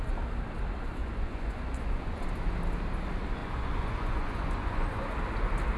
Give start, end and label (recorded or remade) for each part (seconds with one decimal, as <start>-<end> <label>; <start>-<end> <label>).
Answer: 0.0-1.0 recorded; 1.0-2.3 remade; 2.3-3.4 recorded; 3.4-5.1 remade; 5.1-5.8 recorded